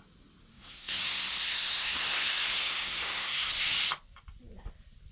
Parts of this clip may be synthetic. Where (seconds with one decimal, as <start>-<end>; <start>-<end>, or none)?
0.5-3.5